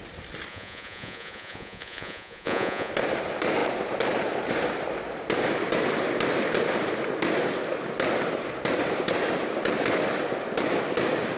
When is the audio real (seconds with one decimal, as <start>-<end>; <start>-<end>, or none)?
0.0-0.5; 2.9-11.4